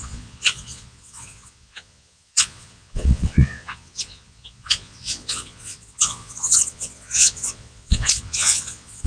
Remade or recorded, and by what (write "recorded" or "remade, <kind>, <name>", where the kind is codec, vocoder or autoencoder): remade, vocoder, Vocos